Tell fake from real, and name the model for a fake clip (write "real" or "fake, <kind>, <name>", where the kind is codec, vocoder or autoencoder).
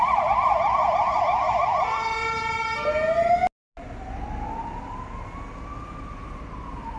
real